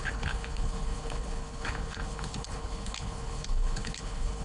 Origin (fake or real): fake